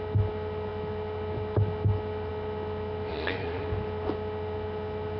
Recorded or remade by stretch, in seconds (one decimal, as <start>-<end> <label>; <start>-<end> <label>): 0.0-3.1 recorded; 3.1-3.6 remade; 3.6-5.2 recorded